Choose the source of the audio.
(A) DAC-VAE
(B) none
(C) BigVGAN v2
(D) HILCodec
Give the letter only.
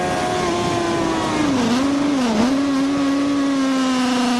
B